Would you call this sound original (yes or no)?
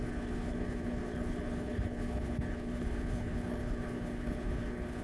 no